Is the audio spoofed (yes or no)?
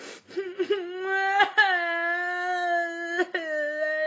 no